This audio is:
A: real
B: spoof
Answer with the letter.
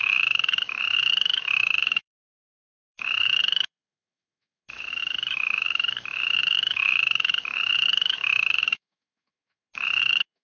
B